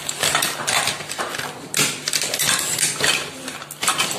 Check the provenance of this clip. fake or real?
real